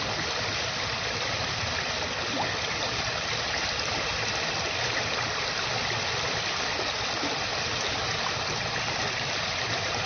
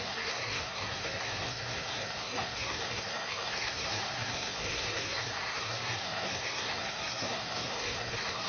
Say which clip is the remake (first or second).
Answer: second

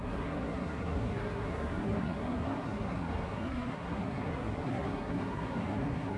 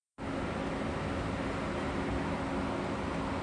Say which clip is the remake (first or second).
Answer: first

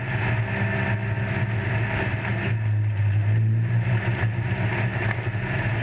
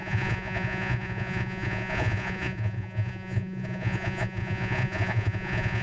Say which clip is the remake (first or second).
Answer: second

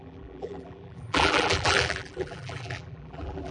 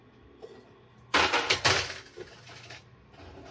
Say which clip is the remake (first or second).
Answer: first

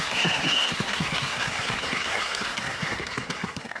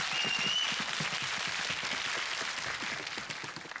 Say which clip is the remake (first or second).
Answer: first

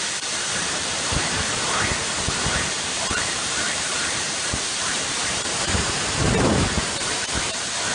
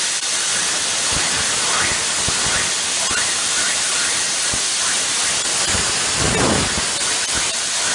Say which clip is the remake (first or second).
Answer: first